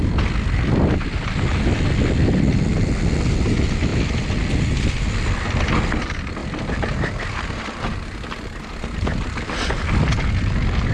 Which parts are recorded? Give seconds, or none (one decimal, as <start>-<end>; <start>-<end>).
0.0-10.9